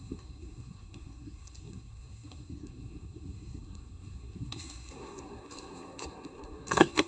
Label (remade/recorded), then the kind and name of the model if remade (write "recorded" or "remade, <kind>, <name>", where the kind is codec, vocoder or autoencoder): remade, codec, SNAC